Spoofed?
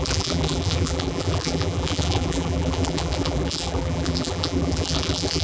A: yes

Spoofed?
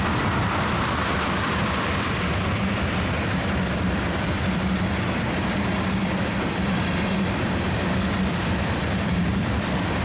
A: yes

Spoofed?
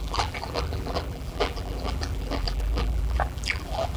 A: yes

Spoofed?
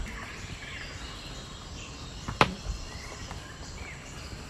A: yes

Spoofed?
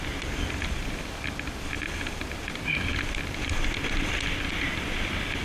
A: yes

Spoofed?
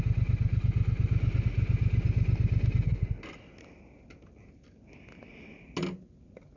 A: no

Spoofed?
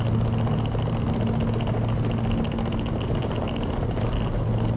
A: no